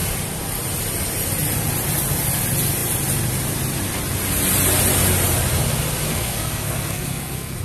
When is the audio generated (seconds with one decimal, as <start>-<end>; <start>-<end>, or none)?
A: 6.1-7.6